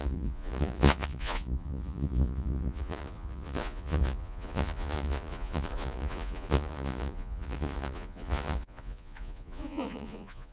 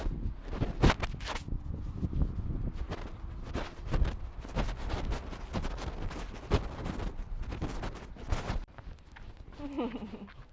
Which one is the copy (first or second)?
first